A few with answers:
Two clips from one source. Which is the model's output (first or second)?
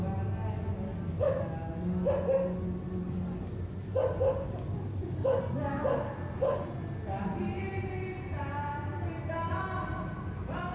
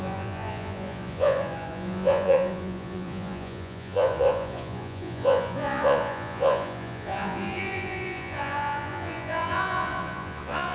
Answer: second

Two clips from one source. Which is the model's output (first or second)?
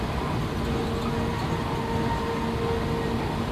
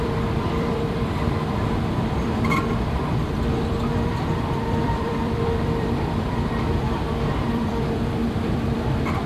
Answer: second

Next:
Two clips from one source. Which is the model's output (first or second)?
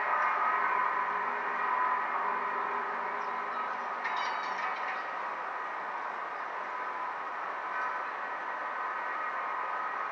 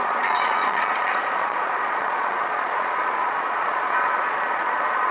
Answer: second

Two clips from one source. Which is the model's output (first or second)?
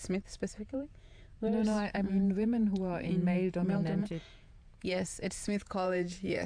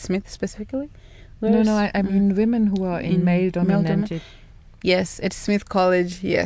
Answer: first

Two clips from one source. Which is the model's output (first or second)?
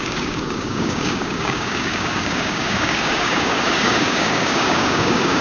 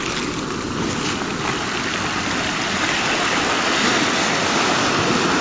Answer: first